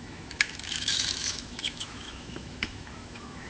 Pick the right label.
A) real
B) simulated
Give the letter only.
B